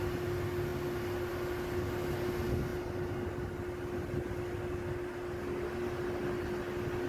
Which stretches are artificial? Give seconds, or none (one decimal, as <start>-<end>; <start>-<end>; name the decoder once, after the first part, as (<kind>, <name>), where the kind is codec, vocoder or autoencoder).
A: none